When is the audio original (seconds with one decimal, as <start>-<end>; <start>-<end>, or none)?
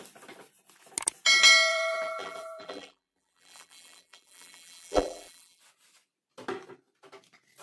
0.0-1.7; 5.6-7.6